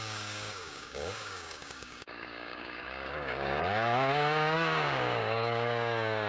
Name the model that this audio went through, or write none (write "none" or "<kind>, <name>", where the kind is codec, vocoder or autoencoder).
codec, DAC